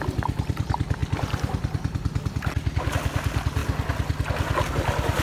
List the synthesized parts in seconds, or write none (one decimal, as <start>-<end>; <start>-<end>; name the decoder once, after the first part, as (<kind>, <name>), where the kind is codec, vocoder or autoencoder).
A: none